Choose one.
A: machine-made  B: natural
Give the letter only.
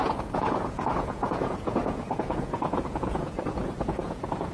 A